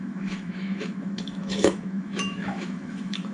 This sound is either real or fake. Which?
fake